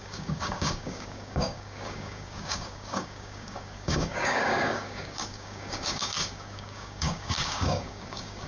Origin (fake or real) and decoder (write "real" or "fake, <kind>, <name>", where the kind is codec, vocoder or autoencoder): fake, codec, DAC